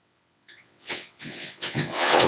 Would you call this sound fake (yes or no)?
yes